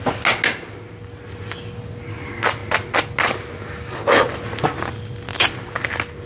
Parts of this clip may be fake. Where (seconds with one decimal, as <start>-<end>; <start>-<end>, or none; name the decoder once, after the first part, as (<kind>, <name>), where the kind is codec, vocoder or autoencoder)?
5.3-6.3 (vocoder, BigVGAN v2)